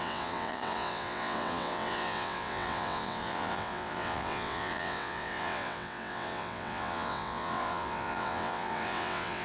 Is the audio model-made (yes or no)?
yes